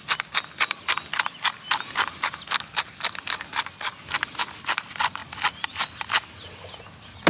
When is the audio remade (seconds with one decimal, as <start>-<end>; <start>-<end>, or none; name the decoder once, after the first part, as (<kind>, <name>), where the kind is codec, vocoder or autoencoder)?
5.2-6.3 (vocoder, BigVGAN v2)